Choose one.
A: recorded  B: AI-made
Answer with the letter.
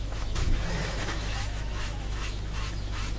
B